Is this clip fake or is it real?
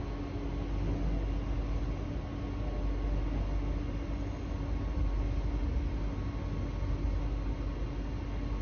real